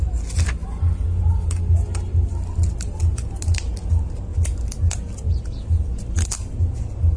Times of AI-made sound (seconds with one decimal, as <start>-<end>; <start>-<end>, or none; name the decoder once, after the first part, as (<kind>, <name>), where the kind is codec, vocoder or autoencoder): none